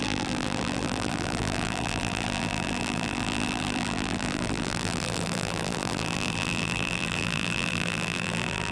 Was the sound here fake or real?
fake